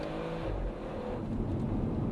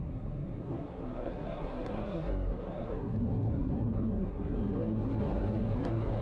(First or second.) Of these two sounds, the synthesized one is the second